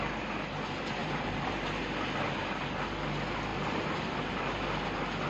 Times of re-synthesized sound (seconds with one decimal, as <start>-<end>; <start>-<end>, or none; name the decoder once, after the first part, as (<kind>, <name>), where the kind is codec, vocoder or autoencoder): 1.0-1.5 (vocoder, BigVGAN v2); 3.5-4.2